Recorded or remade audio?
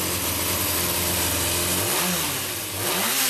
recorded